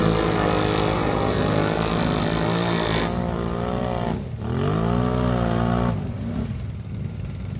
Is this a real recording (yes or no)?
yes